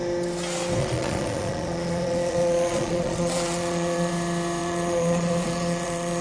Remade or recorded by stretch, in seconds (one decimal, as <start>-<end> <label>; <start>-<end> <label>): 0.0-0.8 recorded; 0.8-4.1 remade; 4.1-4.6 recorded; 4.6-6.2 remade